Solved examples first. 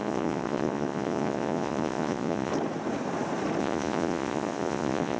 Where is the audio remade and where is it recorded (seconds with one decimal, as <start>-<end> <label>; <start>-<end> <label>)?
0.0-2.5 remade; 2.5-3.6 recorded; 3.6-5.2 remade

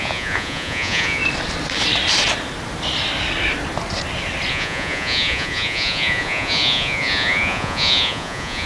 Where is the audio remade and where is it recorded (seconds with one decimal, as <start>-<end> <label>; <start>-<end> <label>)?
0.0-1.2 remade; 1.2-4.5 recorded; 4.5-8.7 remade

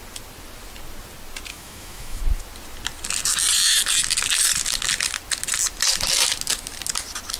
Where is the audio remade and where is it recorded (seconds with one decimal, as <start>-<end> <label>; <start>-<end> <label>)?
0.0-1.5 recorded; 1.5-2.2 remade; 2.2-7.4 recorded

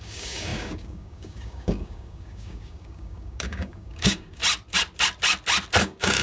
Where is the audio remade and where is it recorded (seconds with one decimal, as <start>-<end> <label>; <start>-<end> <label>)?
0.0-4.4 remade; 4.4-5.8 recorded; 5.8-6.2 remade

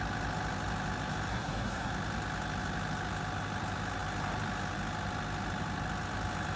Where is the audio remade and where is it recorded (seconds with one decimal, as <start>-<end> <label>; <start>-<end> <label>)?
0.0-1.3 recorded; 1.3-1.9 remade; 1.9-6.6 recorded

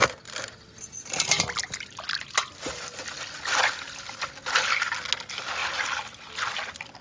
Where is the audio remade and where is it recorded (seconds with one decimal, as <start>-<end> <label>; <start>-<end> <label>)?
0.0-7.0 recorded

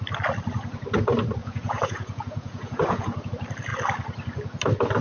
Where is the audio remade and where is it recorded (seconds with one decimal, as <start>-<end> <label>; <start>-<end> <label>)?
0.0-1.4 recorded; 1.4-3.3 remade; 3.3-5.0 recorded

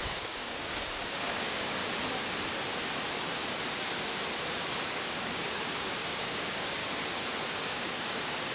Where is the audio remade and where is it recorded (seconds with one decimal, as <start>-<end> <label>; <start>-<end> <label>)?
0.0-1.8 remade; 1.8-4.7 recorded; 4.7-6.8 remade; 6.8-7.6 recorded; 7.6-8.5 remade